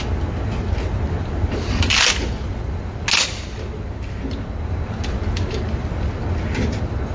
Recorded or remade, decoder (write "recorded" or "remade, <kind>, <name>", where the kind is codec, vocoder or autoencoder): recorded